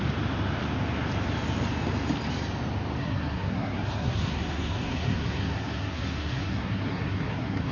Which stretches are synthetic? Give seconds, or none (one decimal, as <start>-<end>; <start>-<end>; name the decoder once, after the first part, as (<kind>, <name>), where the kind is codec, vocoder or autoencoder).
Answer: 3.0-7.7 (codec, SNAC)